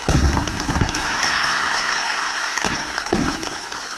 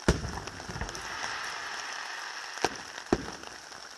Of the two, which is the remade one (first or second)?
first